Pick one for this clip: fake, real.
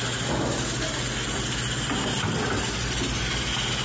real